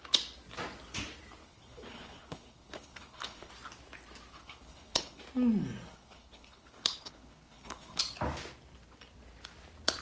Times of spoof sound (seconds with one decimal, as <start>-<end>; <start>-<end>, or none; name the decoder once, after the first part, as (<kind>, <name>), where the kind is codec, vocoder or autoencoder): 1.4-3.5 (codec, HILCodec); 4.3-5.2; 5.9-8.0